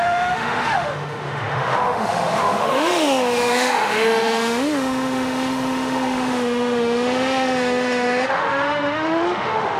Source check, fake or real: fake